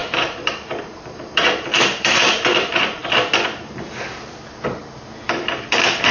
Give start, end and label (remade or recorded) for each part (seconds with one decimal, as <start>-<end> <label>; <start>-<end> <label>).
0.0-3.0 remade; 3.0-5.2 recorded; 5.2-6.1 remade